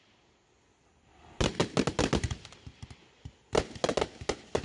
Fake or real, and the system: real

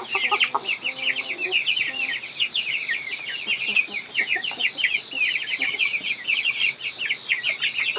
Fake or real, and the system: real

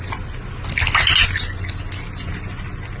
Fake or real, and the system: real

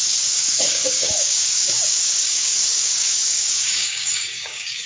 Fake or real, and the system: fake, codec, DAC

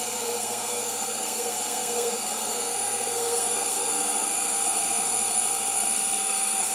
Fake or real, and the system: fake, codec, SNAC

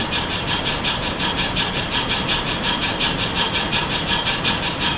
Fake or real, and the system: fake, vocoder, BigVGAN v2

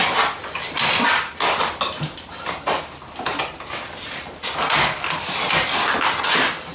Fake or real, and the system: real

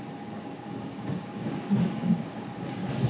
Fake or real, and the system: fake, codec, DAC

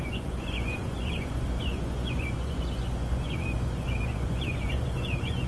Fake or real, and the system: fake, vocoder, Vocos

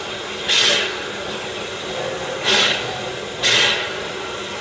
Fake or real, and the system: real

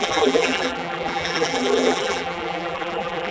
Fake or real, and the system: fake, vocoder, BigVGAN v2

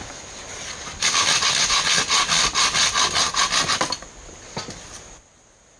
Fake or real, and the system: real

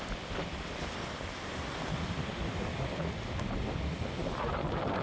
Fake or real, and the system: real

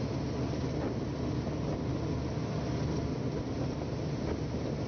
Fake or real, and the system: real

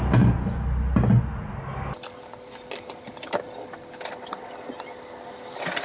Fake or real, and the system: real